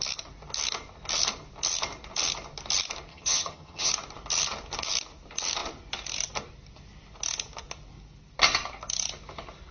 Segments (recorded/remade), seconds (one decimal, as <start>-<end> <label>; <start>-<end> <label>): 0.0-3.1 recorded; 3.1-3.9 remade; 3.9-9.7 recorded